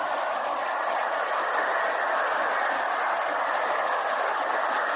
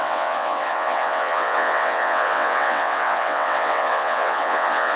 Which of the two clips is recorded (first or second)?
first